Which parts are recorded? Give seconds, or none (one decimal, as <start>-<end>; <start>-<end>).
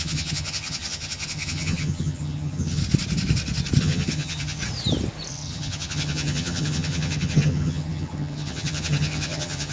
2.8-3.8; 4.6-5.3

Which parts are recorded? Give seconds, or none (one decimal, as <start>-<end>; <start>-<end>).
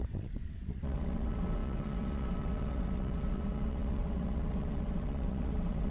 none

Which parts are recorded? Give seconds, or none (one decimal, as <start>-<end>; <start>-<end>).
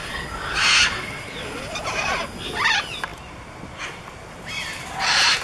0.0-5.4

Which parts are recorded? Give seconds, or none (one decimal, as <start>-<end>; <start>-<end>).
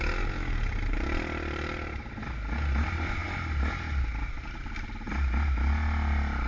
0.0-6.5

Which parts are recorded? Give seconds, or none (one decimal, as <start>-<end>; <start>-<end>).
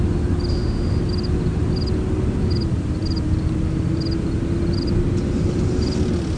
0.0-0.5; 1.0-6.4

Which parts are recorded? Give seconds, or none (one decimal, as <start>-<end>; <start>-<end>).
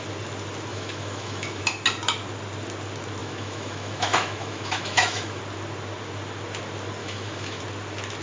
0.0-0.7; 1.6-3.2; 5.4-7.0; 7.6-8.2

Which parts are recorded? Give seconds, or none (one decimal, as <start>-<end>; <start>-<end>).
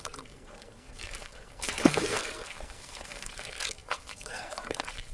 none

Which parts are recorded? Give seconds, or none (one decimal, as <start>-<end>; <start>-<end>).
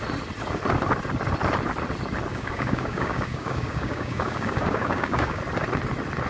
0.0-2.3; 5.4-6.3